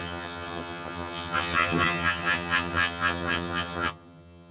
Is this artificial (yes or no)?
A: yes